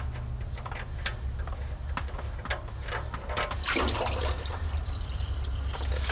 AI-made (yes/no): no